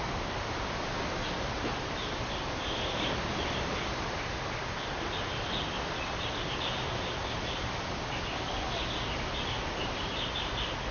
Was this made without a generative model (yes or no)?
yes